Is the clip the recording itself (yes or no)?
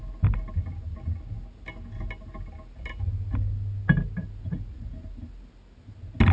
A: yes